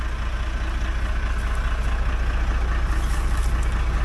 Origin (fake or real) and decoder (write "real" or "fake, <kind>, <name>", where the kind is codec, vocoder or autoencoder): real